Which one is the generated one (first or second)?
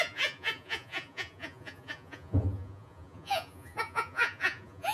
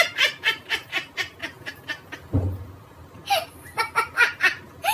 first